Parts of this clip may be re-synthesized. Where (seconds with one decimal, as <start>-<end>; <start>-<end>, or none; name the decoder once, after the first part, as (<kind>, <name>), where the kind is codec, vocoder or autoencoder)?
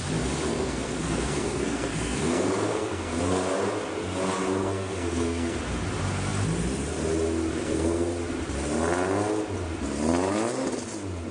0.5-3.2 (codec, SNAC); 4.6-5.6; 7.5-8.1